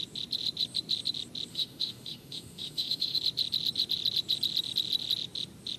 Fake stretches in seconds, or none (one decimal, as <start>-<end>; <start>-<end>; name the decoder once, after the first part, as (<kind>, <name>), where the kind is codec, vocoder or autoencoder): 1.5-3.2 (autoencoder, DAC-VAE)